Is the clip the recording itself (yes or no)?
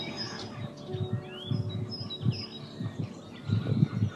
yes